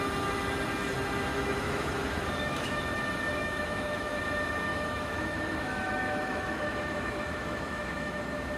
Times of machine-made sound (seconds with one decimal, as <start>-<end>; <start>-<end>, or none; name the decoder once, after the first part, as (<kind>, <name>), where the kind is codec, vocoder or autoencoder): 1.3-3.0 (autoencoder, DAC-VAE); 3.4-4.2; 4.7-8.2

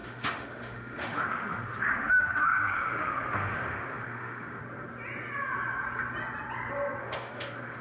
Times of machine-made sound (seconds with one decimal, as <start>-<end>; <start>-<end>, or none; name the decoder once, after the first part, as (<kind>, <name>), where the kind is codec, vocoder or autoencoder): 0.0-4.6 (autoencoder, DAC-VAE); 7.0-7.8